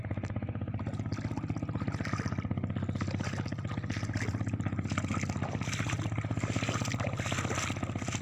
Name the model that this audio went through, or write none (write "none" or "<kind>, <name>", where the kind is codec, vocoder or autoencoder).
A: none